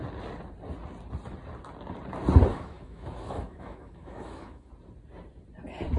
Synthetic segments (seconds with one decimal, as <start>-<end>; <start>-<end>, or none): 2.5-4.7

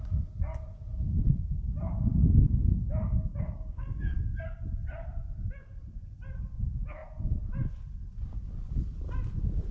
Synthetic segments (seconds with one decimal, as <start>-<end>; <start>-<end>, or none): 2.7-4.6